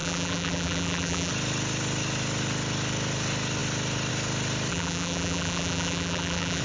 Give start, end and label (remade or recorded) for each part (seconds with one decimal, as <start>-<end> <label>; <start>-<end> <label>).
0.0-1.3 remade; 1.3-4.7 recorded; 4.7-6.6 remade